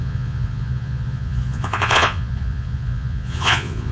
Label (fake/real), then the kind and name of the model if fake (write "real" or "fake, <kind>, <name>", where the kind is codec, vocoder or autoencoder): fake, vocoder, Vocos